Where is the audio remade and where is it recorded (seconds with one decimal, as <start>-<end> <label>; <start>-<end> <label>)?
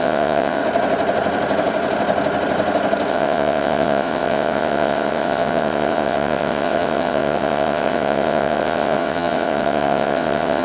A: 0.0-0.6 remade; 0.6-3.1 recorded; 3.1-10.6 remade